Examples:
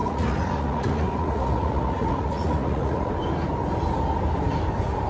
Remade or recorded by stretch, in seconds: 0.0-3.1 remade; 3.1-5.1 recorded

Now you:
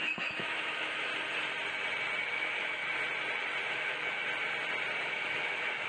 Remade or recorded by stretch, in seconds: 0.0-1.1 remade; 1.1-2.3 recorded; 2.3-2.8 remade; 2.8-3.7 recorded; 3.7-4.2 remade; 4.2-5.0 recorded; 5.0-5.9 remade

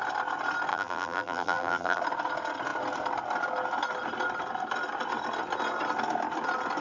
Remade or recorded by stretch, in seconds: 0.0-0.7 recorded; 0.7-2.0 remade; 2.0-6.8 recorded

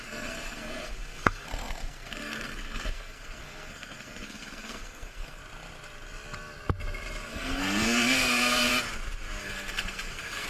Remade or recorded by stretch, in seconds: 0.0-5.4 remade; 5.4-7.3 recorded; 7.3-8.7 remade; 8.7-9.4 recorded; 9.4-10.5 remade

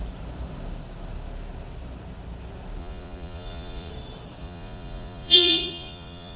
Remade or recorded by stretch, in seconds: 0.0-2.8 recorded; 2.8-3.9 remade; 3.9-4.4 recorded; 4.4-6.4 remade